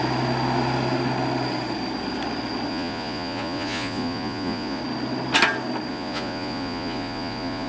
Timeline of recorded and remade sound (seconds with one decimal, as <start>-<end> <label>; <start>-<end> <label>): 0.0-2.7 recorded; 2.7-4.8 remade; 4.8-5.9 recorded; 5.9-7.7 remade